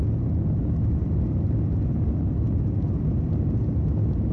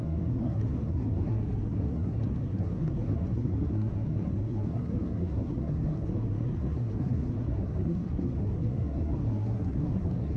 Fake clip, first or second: second